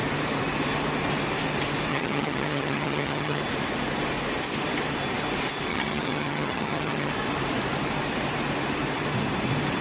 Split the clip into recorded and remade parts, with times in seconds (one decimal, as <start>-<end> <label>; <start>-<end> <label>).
0.0-1.9 recorded; 1.9-3.4 remade; 3.4-5.7 recorded; 5.7-7.1 remade; 7.1-9.8 recorded